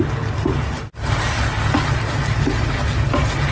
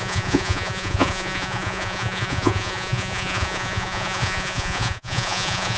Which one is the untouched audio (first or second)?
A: first